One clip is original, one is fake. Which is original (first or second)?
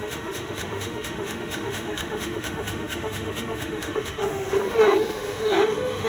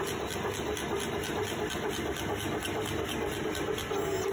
second